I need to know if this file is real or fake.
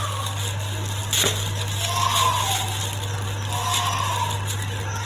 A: real